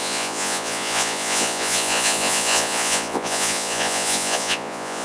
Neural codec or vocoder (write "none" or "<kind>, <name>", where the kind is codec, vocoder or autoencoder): vocoder, Vocos